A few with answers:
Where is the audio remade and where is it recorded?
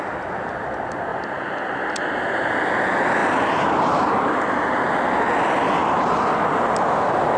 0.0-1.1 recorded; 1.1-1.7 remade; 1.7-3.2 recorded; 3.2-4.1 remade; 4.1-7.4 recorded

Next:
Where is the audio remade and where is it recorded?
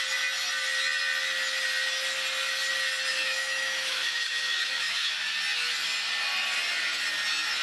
0.0-3.1 recorded; 3.1-5.1 remade; 5.1-7.6 recorded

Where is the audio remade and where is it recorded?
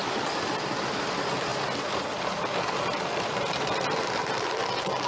0.0-5.1 recorded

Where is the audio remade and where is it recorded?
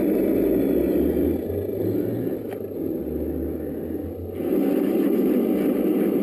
0.0-6.2 recorded